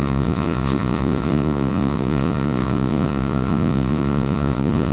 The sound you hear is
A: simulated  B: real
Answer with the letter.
A